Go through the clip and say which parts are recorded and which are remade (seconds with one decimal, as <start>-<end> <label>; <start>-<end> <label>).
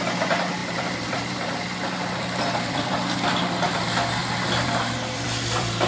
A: 0.0-0.6 recorded; 0.6-2.9 remade; 2.9-4.2 recorded; 4.2-5.9 remade